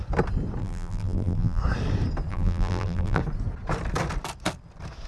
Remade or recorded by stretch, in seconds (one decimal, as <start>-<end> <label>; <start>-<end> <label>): 0.0-0.6 recorded; 0.6-1.6 remade; 1.6-2.3 recorded; 2.3-3.2 remade; 3.2-5.1 recorded